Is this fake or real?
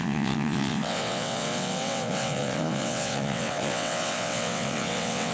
fake